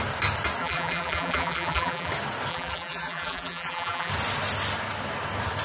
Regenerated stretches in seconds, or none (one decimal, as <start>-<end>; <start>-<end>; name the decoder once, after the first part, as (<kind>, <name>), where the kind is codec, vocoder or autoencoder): 0.6-2.1 (vocoder, BigVGAN v2); 2.5-4.1